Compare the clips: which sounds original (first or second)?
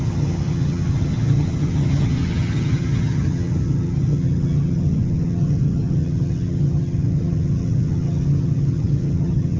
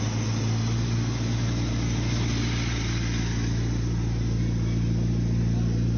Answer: second